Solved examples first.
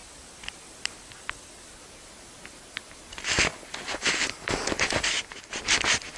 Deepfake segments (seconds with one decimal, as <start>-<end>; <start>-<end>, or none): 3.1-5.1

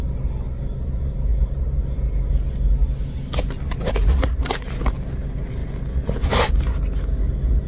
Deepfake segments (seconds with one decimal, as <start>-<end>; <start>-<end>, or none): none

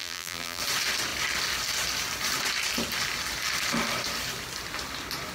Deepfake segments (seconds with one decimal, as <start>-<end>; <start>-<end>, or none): 0.0-0.6

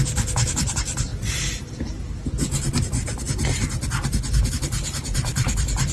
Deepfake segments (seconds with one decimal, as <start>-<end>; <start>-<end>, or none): 0.0-1.1; 4.5-5.9

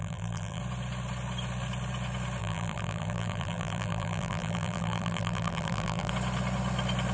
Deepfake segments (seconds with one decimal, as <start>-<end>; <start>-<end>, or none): 0.0-0.6; 2.4-6.1

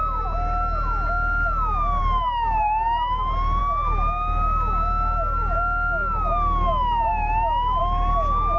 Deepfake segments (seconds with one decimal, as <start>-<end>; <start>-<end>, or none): none

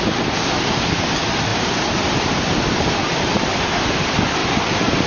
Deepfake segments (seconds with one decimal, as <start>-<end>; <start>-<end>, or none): 1.5-3.7; 4.4-5.1